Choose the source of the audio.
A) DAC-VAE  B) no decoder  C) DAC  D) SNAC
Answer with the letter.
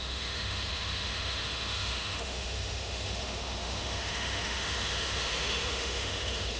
A